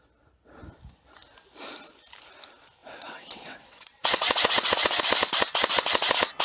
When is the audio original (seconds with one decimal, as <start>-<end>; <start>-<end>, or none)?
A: 0.0-2.8; 5.0-6.4

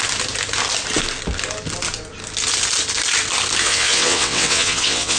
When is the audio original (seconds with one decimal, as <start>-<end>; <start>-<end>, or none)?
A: 0.0-3.6

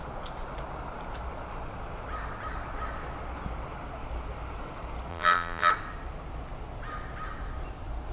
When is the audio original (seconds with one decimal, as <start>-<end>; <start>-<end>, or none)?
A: 0.0-5.1; 5.7-8.1

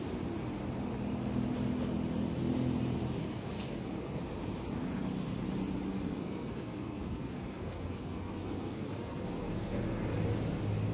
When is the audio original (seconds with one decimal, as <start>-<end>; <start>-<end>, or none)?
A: 0.0-3.2; 4.2-5.9; 9.8-10.9